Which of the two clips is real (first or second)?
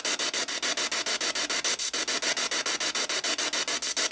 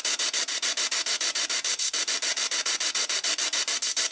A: first